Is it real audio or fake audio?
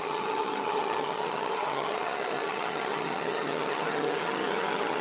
fake